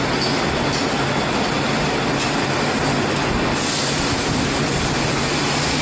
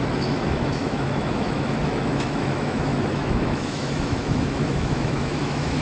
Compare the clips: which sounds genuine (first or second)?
first